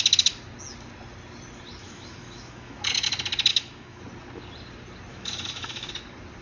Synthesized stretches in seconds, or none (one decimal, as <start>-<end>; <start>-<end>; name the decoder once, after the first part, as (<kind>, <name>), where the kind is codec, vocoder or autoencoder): 1.8-3.1 (autoencoder, DAC-VAE); 3.5-4.0; 5.1-5.9